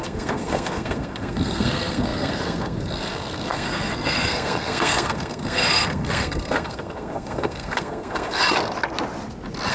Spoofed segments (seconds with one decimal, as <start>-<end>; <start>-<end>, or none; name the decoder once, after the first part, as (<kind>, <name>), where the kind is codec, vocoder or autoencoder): 0.0-8.4 (codec, SNAC)